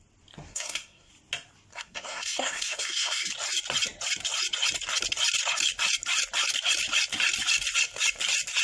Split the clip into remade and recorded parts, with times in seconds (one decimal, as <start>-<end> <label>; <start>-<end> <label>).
0.0-0.5 recorded; 0.5-1.1 remade; 1.1-1.7 recorded; 1.7-3.3 remade; 3.3-8.6 recorded